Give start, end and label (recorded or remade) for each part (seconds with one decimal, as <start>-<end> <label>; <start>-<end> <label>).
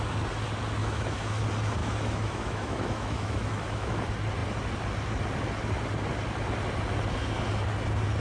0.0-0.8 recorded; 0.8-1.4 remade; 1.4-1.8 recorded; 1.8-4.0 remade; 4.0-8.2 recorded